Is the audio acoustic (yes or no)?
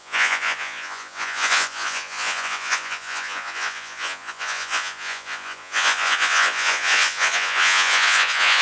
no